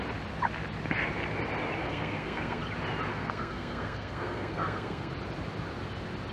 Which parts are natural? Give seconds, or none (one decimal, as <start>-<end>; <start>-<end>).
0.0-1.8; 2.6-3.1; 5.1-6.3